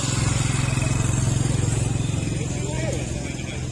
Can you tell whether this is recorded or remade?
recorded